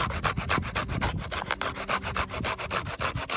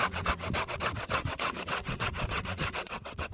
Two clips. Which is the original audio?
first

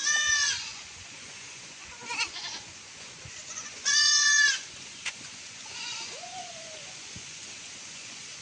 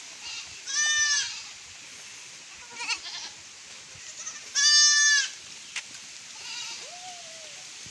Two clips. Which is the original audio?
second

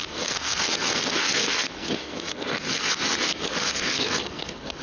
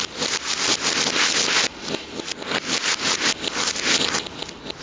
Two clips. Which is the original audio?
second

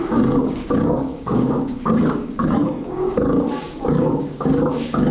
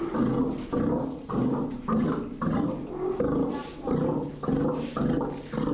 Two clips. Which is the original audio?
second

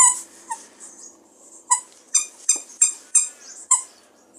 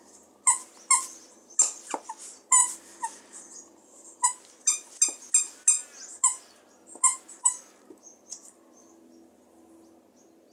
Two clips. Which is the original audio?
second